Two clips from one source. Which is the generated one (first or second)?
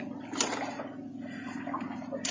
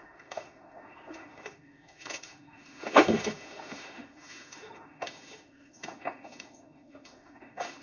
second